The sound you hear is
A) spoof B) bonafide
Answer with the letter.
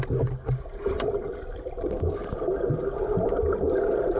B